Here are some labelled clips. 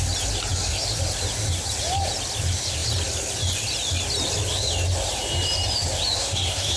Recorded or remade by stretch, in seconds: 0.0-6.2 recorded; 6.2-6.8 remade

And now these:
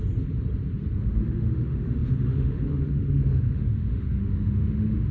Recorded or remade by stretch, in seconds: 0.0-1.0 recorded; 1.0-5.1 remade

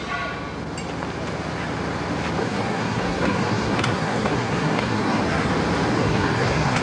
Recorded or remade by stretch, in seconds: 0.0-2.4 recorded; 2.4-5.5 remade; 5.5-5.9 recorded; 5.9-6.8 remade

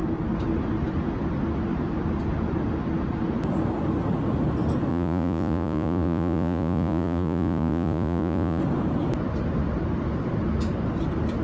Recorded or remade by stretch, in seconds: 0.0-4.9 recorded; 4.9-8.6 remade; 8.6-11.4 recorded

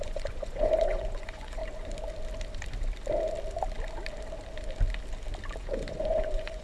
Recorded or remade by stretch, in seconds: 0.0-1.6 remade; 1.6-5.6 recorded; 5.6-6.6 remade